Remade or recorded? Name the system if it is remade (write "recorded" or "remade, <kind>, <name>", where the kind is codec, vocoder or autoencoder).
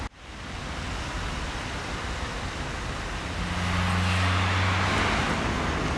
recorded